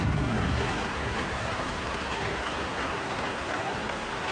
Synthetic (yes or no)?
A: yes